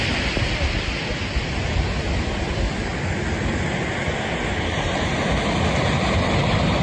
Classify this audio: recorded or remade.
recorded